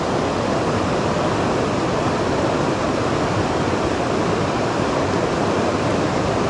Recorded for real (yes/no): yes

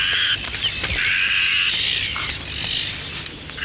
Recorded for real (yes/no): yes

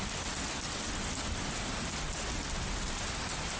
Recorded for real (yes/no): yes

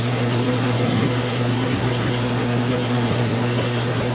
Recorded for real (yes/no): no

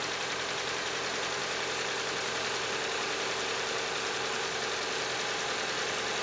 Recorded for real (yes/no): yes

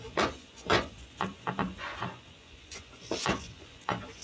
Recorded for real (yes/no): no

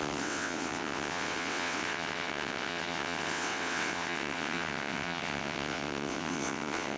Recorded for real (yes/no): no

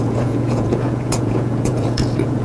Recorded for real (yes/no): no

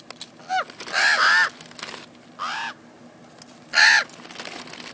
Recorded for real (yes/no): yes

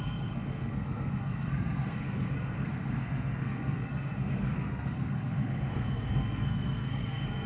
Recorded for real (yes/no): no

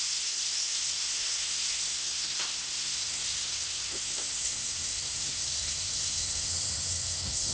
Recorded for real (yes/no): no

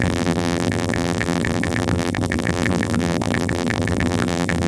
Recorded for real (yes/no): no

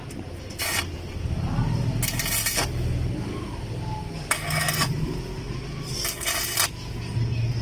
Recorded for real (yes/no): yes